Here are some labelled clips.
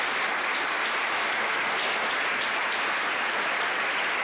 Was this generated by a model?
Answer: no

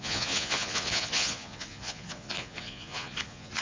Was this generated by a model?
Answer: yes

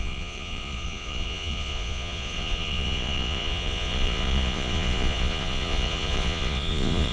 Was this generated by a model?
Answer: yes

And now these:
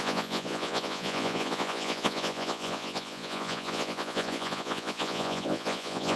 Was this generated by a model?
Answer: yes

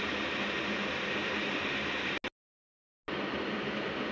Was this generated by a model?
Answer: no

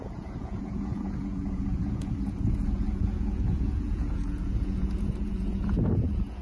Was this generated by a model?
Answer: yes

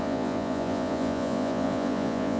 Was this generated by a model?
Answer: yes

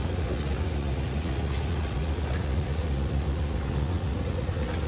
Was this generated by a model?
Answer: yes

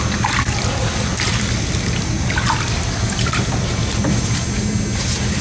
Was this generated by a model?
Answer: no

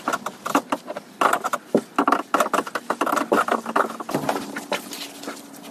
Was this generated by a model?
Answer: no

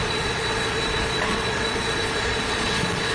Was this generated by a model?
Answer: yes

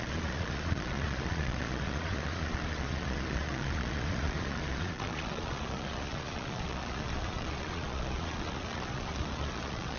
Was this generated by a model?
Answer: yes